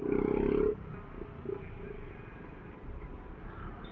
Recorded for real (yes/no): yes